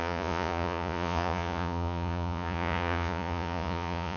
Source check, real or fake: fake